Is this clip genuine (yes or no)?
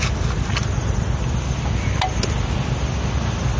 yes